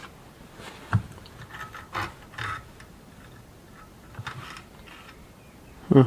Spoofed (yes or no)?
no